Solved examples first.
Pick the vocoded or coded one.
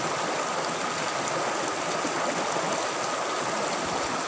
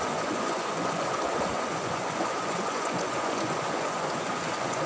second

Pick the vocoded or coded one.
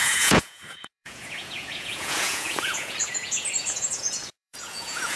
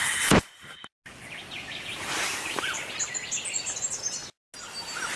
first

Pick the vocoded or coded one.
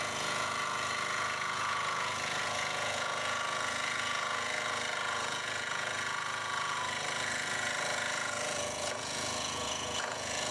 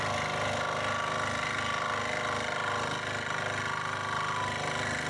first